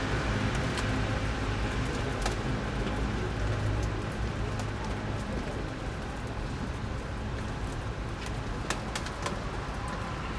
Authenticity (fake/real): real